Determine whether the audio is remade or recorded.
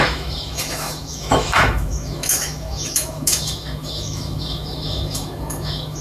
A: remade